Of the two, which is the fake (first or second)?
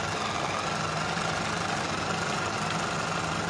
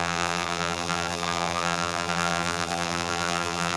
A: second